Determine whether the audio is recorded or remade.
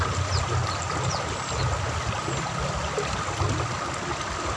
recorded